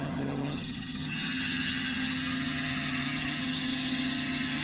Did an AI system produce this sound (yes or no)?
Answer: yes